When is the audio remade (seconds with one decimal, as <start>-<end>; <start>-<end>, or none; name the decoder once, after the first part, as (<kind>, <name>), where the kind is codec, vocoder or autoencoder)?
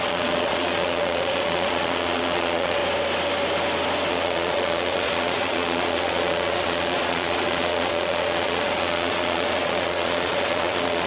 0.0-2.8 (vocoder, Vocos); 4.1-11.1